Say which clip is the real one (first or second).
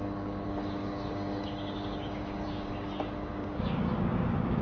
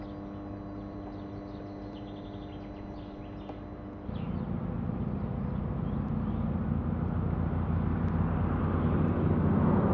second